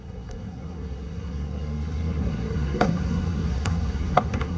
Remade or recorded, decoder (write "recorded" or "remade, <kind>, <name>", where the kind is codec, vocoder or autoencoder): remade, codec, SNAC